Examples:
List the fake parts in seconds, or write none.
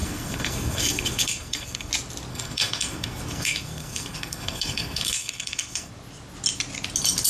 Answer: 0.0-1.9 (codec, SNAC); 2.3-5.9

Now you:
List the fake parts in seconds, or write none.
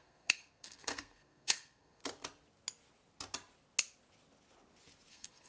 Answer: 0.0-2.0 (codec, SNAC); 5.1-5.5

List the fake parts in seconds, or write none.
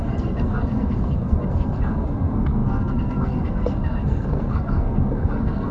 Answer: 0.0-5.7 (codec, SNAC)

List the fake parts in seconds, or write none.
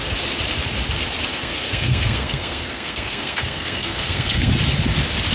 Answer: 1.3-4.5 (codec, SNAC)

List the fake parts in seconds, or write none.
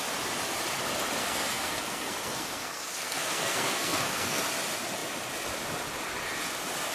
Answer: 1.2-4.4 (codec, SNAC)